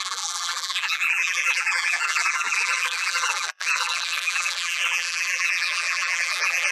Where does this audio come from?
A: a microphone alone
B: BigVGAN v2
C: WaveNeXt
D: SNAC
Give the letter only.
B